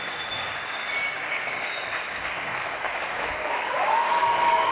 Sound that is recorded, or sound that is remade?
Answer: remade